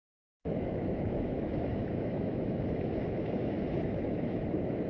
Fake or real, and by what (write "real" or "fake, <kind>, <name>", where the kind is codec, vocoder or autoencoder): fake, autoencoder, DAC-VAE